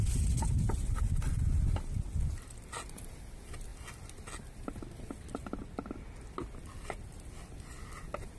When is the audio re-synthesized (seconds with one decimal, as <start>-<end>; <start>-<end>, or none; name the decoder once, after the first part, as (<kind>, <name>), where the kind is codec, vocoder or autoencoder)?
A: none